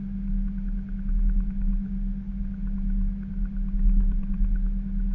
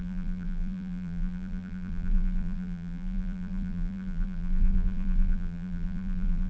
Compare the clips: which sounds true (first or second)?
first